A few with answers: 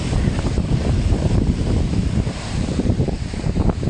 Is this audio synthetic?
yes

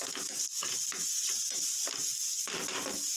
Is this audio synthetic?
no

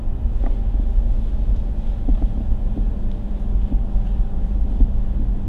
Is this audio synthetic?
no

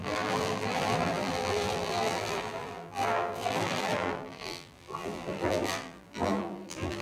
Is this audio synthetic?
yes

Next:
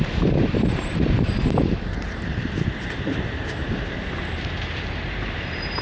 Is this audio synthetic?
yes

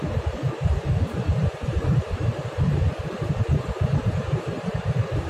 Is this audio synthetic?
yes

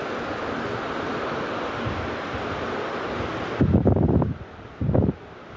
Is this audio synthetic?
no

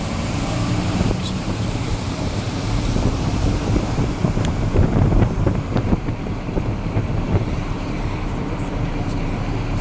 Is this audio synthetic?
yes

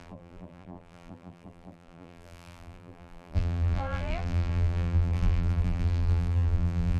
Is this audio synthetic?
yes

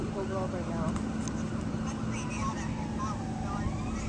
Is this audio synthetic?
no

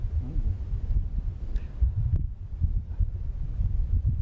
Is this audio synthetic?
no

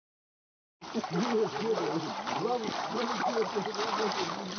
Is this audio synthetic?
yes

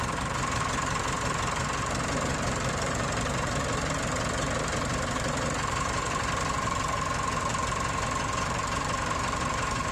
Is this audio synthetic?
yes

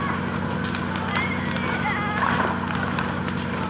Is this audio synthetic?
no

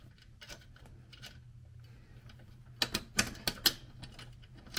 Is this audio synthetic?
no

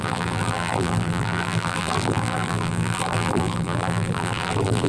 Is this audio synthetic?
yes